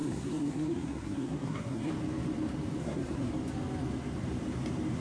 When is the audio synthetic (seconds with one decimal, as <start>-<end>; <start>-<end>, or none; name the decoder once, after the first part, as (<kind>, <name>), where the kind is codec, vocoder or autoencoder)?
0.0-1.9 (codec, SNAC); 2.8-3.3

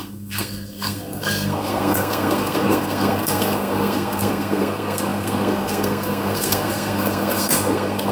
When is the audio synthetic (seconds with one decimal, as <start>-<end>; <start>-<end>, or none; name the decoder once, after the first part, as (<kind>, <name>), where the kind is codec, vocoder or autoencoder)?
0.0-8.1 (codec, SNAC)

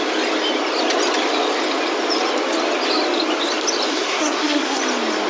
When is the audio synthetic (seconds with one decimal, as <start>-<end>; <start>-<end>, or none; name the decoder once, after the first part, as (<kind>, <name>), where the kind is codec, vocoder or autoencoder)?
3.9-4.8 (codec, SNAC)

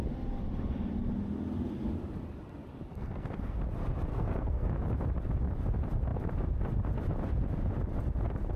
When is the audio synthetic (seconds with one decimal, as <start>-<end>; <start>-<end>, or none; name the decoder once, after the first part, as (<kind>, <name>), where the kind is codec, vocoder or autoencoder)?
2.9-3.6 (codec, SNAC); 4.1-4.7

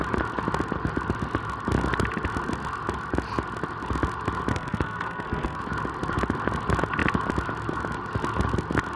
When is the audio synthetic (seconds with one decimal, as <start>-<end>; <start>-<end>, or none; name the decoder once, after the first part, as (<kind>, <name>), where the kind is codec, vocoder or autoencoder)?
4.5-5.6 (codec, SNAC)

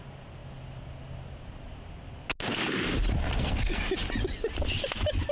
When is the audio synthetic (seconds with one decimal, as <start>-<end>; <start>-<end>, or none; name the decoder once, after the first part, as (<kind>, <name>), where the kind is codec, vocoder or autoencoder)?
3.2-3.8 (codec, SNAC)